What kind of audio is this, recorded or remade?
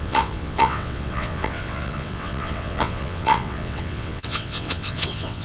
remade